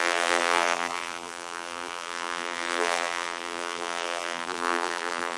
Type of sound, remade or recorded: remade